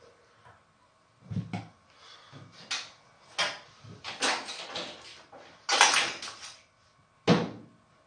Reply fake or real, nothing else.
real